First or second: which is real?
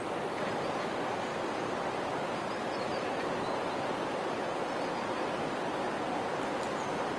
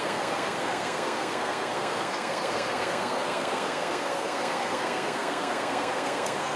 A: first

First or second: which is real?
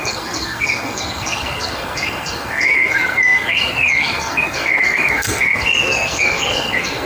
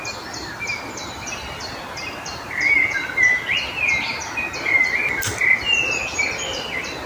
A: second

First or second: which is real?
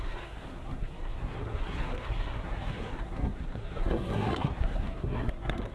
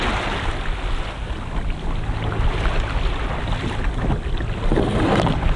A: second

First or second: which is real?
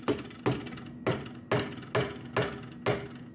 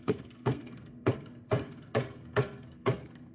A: first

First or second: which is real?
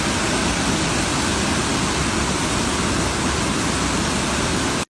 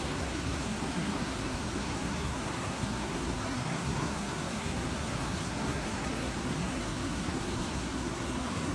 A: first